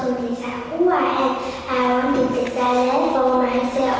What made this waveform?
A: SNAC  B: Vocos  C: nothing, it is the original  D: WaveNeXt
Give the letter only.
C